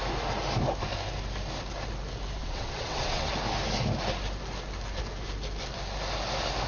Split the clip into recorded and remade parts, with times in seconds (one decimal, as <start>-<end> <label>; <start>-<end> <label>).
0.0-2.4 recorded; 2.4-3.3 remade; 3.3-6.7 recorded